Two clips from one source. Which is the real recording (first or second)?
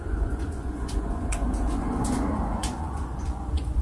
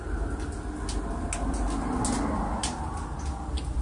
second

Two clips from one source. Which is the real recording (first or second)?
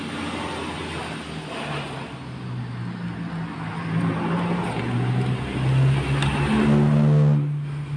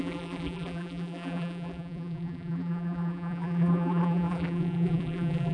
first